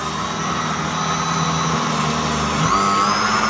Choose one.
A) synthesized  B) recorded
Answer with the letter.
B